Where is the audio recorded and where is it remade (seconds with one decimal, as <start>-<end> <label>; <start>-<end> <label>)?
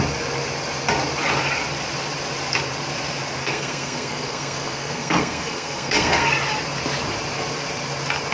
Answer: 0.0-3.4 recorded; 3.4-6.3 remade; 6.3-8.3 recorded